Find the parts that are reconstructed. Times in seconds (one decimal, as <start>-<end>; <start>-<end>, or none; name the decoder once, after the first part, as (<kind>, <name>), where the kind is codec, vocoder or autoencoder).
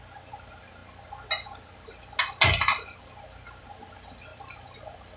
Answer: none